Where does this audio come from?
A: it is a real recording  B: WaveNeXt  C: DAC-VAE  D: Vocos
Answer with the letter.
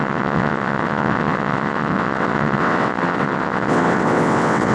B